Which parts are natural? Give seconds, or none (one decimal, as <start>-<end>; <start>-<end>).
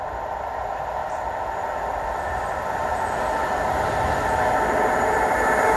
0.0-5.8